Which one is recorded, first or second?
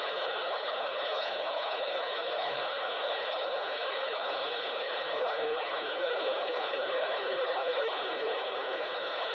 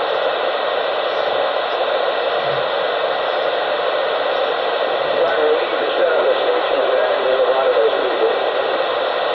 second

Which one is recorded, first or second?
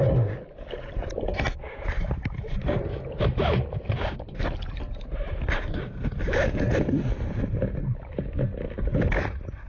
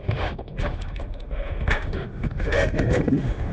first